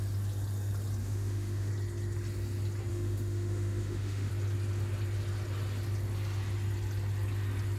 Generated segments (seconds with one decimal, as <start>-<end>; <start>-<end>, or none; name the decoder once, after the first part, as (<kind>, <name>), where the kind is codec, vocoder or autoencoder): 1.0-1.7 (autoencoder, DAC-VAE); 2.9-4.3